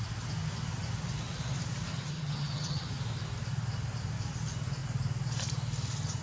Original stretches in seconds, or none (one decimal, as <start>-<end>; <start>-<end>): 0.0-1.9; 2.9-6.2